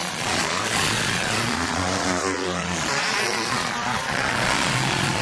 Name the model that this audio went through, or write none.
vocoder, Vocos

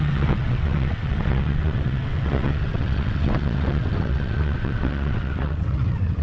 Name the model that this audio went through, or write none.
vocoder, WaveNeXt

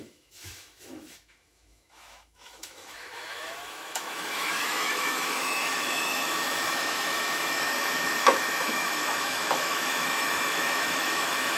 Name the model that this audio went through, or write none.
autoencoder, DAC-VAE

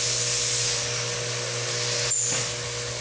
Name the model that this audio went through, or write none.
none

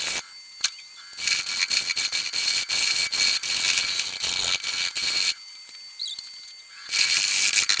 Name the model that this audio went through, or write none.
none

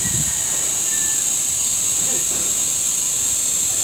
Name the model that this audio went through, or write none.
vocoder, BigVGAN v2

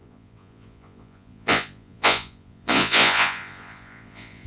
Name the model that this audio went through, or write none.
vocoder, Vocos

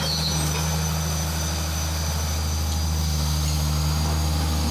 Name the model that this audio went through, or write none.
none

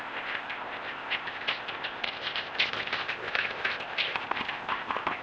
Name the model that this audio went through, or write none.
codec, ZipCodec